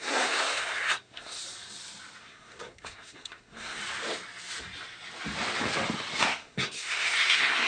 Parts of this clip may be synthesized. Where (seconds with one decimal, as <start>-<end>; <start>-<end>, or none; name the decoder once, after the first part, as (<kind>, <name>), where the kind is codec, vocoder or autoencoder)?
0.0-1.4 (codec, SNAC); 2.2-3.8; 6.2-7.7

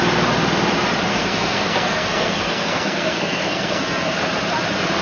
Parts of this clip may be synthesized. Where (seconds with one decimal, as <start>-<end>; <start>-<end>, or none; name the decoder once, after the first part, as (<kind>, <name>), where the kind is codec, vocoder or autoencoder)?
1.1-4.1 (codec, SNAC)